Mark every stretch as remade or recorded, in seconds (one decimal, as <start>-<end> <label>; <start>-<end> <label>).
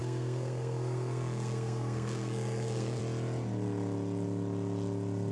0.0-3.0 remade; 3.0-5.3 recorded